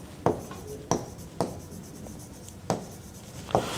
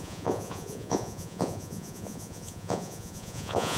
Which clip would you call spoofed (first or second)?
second